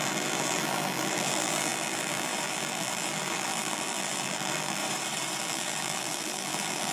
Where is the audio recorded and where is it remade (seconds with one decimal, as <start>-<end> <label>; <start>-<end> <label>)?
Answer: 0.0-4.8 remade; 4.8-5.4 recorded; 5.4-6.9 remade